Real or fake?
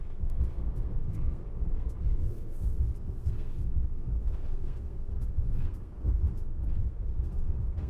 fake